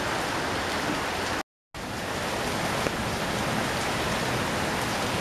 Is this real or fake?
real